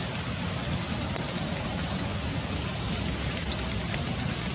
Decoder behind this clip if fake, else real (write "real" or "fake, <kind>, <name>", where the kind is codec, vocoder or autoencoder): real